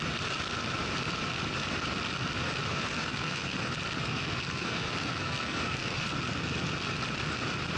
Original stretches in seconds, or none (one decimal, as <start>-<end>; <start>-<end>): 0.0-2.7; 3.5-4.0; 6.1-7.8

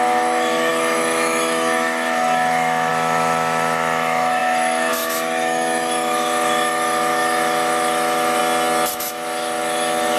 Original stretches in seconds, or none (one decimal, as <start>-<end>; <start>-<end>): 8.4-8.9

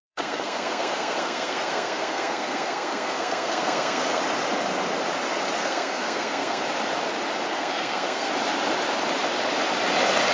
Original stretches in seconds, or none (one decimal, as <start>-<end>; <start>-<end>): 4.2-5.6; 6.6-7.5; 8.3-10.3

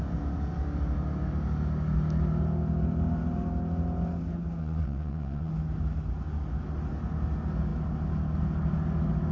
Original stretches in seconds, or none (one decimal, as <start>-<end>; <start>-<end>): 0.0-4.6; 5.5-9.3

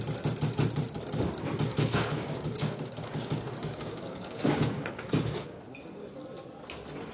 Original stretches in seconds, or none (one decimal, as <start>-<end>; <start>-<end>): 0.0-1.7; 5.6-7.1